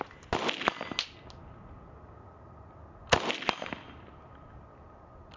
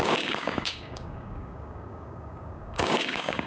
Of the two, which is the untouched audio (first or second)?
first